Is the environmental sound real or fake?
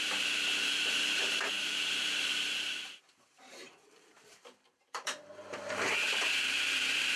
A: fake